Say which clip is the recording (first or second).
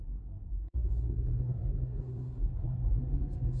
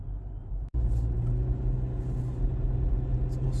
second